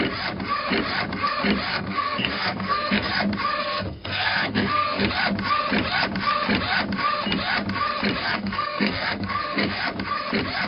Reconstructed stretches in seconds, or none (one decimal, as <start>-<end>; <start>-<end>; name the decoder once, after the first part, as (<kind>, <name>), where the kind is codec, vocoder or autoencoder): 1.7-3.1 (codec, SNAC); 3.7-5.1; 8.2-9.8